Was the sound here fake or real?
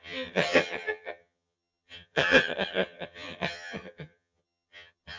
fake